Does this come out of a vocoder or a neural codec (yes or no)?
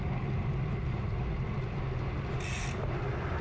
no